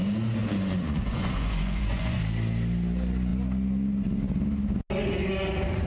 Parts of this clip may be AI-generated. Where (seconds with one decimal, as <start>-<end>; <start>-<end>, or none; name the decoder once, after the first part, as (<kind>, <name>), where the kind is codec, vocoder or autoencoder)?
0.4-2.2 (vocoder, Vocos)